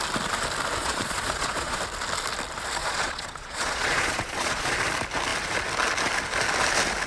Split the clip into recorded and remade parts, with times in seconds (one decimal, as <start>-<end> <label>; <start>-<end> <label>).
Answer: 0.0-0.8 recorded; 0.8-1.8 remade; 1.8-2.8 recorded; 2.8-4.7 remade; 4.7-7.1 recorded